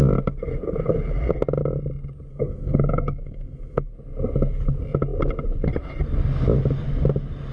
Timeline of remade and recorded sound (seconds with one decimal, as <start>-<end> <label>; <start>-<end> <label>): 0.0-2.3 recorded; 2.3-3.9 remade; 3.9-7.5 recorded